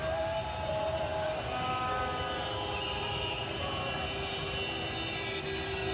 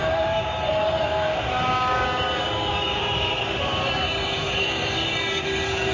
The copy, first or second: second